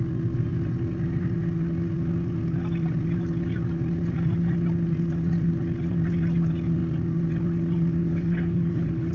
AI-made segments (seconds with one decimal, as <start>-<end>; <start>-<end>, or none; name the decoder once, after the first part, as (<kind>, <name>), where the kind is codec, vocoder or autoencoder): 8.0-9.1 (codec, HILCodec)